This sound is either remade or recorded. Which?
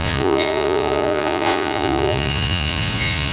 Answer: remade